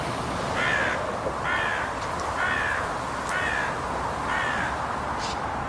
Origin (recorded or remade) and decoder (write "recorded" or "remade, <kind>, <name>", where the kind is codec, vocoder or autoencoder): recorded